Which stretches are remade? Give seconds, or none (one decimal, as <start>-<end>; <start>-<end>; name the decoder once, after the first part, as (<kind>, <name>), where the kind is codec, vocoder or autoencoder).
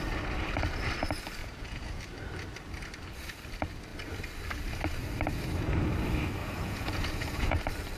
1.4-2.0 (vocoder, Vocos); 6.4-7.6